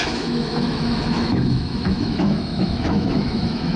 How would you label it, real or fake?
fake